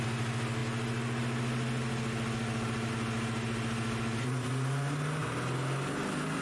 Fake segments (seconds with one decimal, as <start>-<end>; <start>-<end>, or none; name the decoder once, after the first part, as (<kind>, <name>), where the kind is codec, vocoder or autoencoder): none